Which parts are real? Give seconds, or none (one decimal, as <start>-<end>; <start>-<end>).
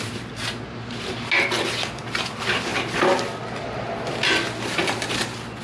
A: 0.0-5.6